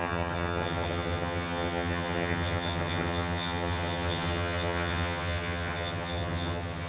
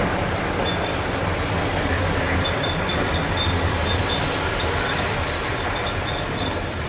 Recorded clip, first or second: second